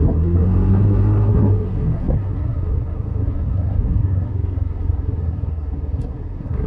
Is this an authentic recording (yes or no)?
no